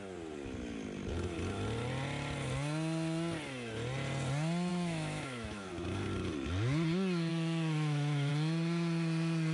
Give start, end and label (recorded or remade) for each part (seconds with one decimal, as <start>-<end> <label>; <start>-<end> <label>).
0.0-4.7 recorded; 4.7-5.7 remade; 5.7-7.3 recorded; 7.3-8.3 remade; 8.3-9.5 recorded